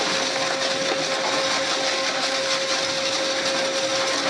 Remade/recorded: recorded